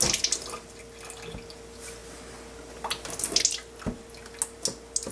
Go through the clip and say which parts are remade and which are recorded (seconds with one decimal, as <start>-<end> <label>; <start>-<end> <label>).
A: 0.0-5.1 recorded